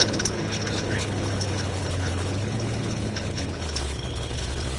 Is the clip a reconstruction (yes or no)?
yes